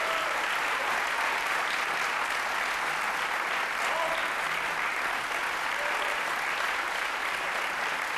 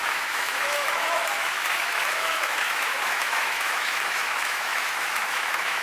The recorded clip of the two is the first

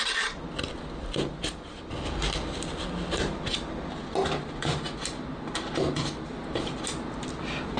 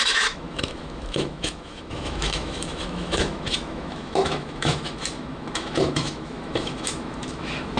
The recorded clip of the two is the first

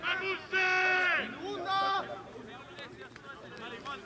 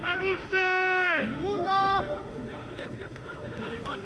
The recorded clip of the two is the first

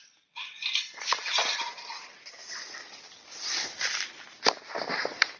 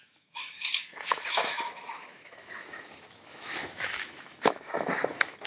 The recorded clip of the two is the first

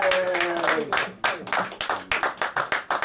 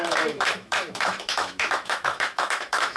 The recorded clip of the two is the first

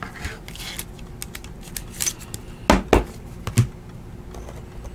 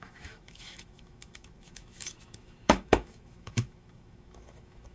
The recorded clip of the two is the first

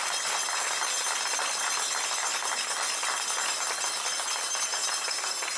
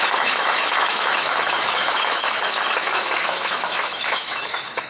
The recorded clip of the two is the first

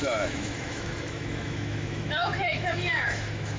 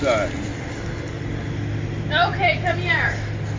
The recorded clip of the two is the second